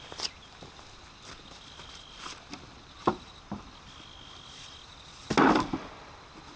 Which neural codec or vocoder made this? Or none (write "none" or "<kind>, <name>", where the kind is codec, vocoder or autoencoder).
none